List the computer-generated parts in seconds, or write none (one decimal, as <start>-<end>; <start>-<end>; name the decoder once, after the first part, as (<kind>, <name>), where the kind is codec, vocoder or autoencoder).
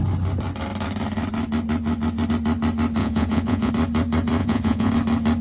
3.0-3.7 (vocoder, Vocos); 4.4-4.9